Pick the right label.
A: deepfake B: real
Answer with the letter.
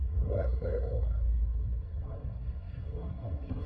A